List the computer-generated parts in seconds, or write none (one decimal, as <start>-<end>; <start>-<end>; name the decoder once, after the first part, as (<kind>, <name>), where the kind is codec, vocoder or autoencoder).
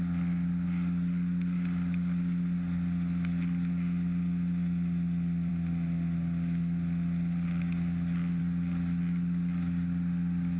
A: none